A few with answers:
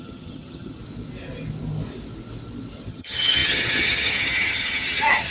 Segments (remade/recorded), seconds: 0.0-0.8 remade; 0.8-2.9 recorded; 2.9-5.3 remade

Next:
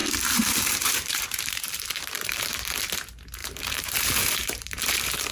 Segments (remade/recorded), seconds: 0.0-2.6 remade; 2.6-3.4 recorded; 3.4-5.3 remade

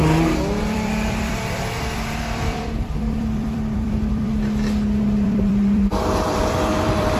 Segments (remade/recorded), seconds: 0.0-0.6 recorded; 0.6-4.3 remade; 4.3-5.0 recorded; 5.0-7.2 remade

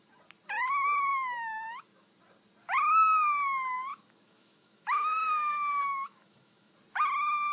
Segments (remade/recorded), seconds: 0.0-1.1 recorded; 1.1-2.1 remade; 2.1-3.9 recorded; 3.9-6.7 remade; 6.7-7.5 recorded

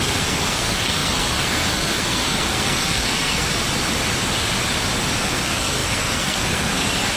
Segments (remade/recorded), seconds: 0.0-3.5 remade; 3.5-5.2 recorded; 5.2-7.2 remade

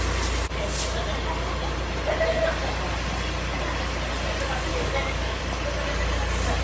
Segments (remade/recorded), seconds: 0.0-4.7 recorded; 4.7-5.4 remade; 5.4-6.6 recorded

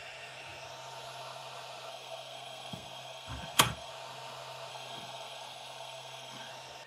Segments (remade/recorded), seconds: 0.0-1.9 recorded; 1.9-3.9 remade; 3.9-4.7 recorded; 4.7-6.5 remade; 6.5-6.9 recorded